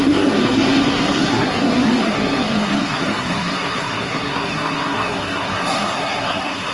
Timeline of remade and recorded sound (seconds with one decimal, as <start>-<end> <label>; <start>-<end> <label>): 0.0-6.7 remade